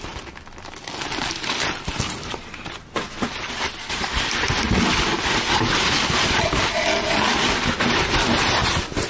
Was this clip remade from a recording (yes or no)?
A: no